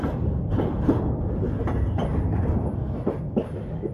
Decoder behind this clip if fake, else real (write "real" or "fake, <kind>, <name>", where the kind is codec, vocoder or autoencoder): real